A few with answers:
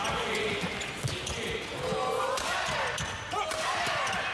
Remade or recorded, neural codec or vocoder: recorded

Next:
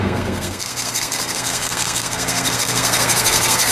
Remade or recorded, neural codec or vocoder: remade, codec, SNAC